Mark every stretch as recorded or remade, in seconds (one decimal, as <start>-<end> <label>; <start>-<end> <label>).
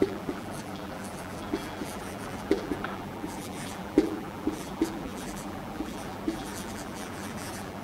0.0-7.8 remade